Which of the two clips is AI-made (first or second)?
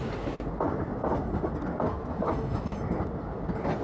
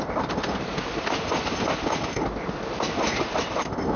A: second